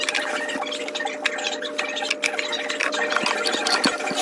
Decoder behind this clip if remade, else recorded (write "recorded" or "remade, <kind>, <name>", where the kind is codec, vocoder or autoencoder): recorded